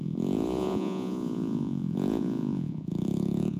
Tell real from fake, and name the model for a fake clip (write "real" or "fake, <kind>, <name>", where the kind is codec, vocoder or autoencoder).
fake, vocoder, Vocos